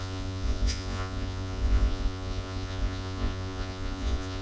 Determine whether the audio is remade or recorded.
remade